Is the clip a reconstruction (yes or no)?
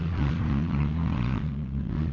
yes